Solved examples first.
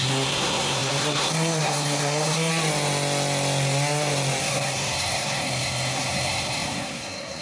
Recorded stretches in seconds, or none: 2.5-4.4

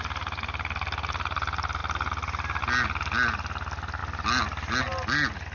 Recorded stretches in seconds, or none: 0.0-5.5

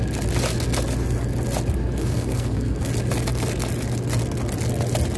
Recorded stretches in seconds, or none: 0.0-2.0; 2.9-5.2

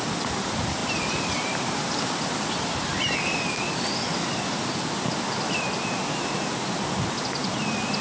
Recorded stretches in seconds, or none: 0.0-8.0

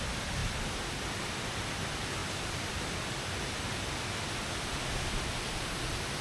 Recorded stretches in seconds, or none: 0.0-6.2

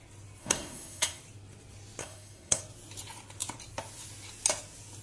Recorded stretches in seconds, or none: 0.0-0.4; 1.2-2.0; 2.6-5.0